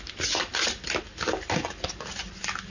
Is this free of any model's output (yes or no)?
yes